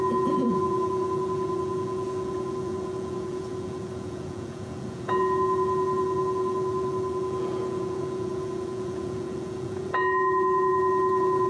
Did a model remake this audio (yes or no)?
yes